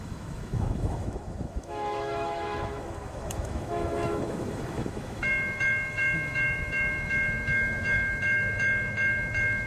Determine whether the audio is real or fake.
fake